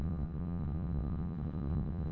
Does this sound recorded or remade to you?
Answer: remade